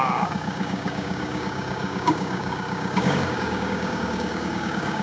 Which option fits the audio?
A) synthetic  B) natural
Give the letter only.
A